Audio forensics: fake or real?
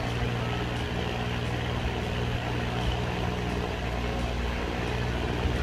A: real